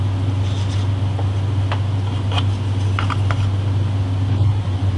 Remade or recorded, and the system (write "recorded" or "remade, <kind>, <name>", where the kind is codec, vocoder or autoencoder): recorded